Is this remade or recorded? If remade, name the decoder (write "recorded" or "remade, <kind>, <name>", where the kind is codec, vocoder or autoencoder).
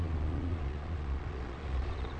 remade, vocoder, Vocos